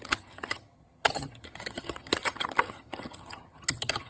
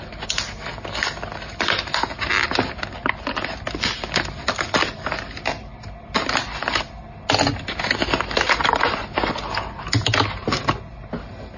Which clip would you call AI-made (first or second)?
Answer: first